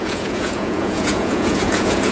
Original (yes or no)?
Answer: no